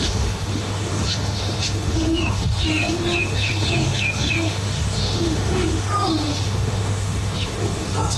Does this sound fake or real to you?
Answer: fake